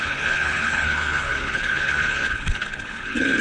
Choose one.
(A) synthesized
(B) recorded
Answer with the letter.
A